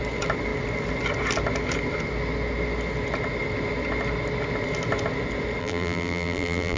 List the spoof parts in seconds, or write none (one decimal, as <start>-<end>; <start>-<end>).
5.6-6.8